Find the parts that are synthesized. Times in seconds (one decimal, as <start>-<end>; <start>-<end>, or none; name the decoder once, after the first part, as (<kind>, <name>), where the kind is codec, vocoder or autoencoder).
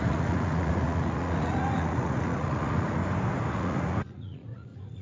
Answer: 0.0-3.0 (vocoder, Vocos); 3.5-5.0